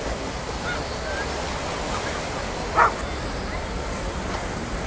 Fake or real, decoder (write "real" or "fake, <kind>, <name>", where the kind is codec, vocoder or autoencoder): real